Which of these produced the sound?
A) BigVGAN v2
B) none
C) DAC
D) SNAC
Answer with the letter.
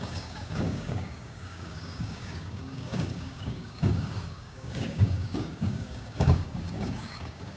C